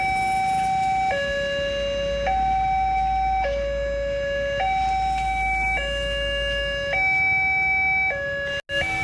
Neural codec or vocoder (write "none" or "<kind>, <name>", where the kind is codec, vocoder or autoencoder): none